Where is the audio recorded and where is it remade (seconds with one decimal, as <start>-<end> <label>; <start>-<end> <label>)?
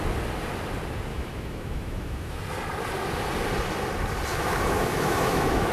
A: 0.0-1.1 recorded; 1.1-2.4 remade; 2.4-4.3 recorded; 4.3-5.7 remade